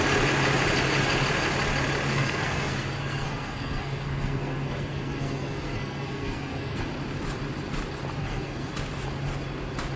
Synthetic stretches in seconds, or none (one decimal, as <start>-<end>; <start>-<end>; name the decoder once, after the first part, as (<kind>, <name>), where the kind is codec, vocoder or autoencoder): 2.1-6.9 (codec, SNAC); 8.2-8.7